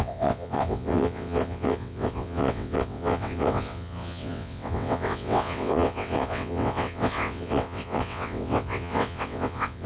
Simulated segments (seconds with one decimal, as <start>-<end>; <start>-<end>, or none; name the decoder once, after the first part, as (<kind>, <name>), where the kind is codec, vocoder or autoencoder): 0.0-9.9 (vocoder, WaveNeXt)